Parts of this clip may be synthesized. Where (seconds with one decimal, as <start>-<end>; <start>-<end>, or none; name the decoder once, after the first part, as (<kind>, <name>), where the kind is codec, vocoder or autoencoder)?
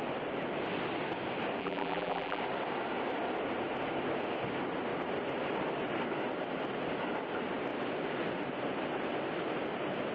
1.6-2.4 (vocoder, BigVGAN v2)